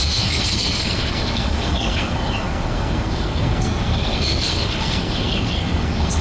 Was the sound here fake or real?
fake